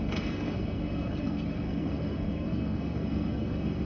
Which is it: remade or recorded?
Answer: remade